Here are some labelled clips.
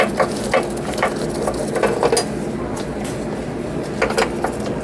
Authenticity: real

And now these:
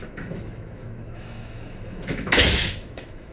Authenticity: fake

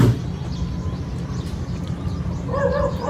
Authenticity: real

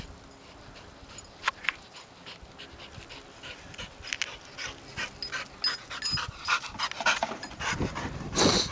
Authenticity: real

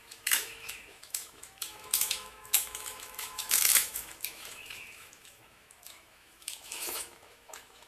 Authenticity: fake